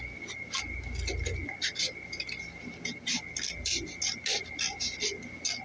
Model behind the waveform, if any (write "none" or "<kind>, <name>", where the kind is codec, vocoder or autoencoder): none